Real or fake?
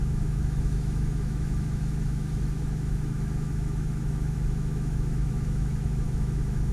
fake